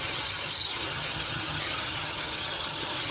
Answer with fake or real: fake